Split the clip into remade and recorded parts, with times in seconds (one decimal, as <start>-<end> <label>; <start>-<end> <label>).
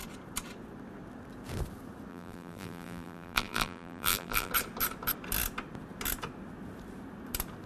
0.0-2.1 recorded; 2.1-4.5 remade; 4.5-7.7 recorded